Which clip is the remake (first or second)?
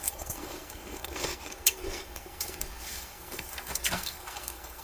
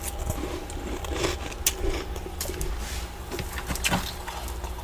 first